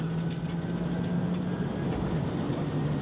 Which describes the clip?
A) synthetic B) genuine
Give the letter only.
B